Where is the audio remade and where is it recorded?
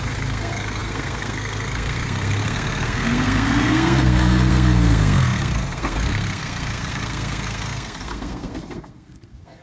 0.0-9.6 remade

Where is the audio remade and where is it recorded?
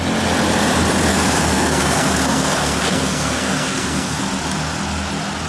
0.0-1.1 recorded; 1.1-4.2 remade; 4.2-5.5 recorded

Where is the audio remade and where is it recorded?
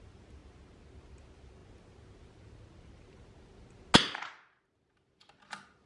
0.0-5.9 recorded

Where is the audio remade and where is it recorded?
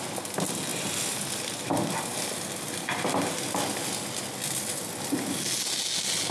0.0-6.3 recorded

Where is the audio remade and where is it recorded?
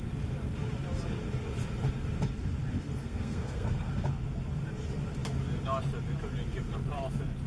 0.0-3.0 recorded; 3.0-3.9 remade; 3.9-7.5 recorded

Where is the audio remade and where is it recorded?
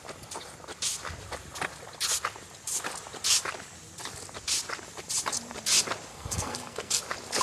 0.0-6.1 recorded; 6.1-7.0 remade; 7.0-7.4 recorded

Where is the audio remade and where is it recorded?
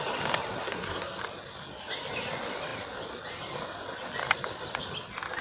0.0-0.6 recorded; 0.6-1.2 remade; 1.2-5.4 recorded